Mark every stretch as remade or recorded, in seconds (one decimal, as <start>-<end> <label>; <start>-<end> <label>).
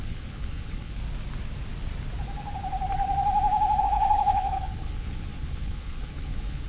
0.0-1.0 remade; 1.0-3.8 recorded; 3.8-6.7 remade